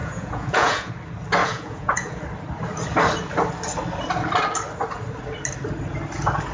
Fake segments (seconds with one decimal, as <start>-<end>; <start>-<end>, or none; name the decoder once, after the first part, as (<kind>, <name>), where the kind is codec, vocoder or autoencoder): 0.0-0.9 (vocoder, Vocos); 1.4-2.2